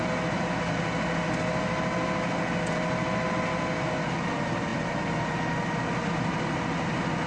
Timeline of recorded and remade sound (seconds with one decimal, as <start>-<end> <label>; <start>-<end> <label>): 0.0-7.3 recorded